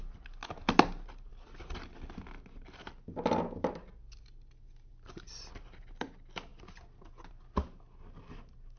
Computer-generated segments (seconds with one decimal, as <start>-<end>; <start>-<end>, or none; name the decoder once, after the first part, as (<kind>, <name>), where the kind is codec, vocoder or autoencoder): none